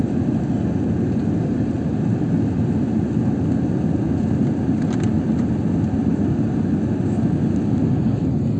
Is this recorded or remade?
recorded